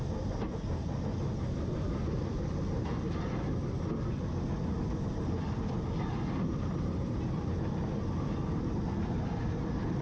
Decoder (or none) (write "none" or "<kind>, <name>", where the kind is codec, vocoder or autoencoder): none